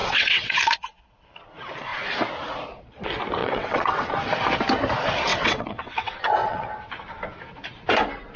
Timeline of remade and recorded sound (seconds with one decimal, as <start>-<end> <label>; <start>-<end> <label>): 0.0-0.6 remade; 0.6-3.4 recorded; 3.4-4.1 remade; 4.1-5.3 recorded; 5.3-6.9 remade; 6.9-8.4 recorded